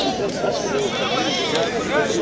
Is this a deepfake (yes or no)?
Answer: no